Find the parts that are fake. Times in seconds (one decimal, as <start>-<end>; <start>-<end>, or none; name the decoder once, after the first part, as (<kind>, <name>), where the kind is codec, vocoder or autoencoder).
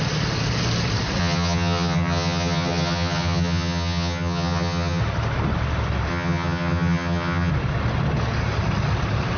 1.2-5.0 (vocoder, HiFi-GAN); 6.1-7.5